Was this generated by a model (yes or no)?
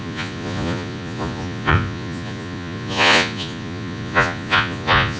yes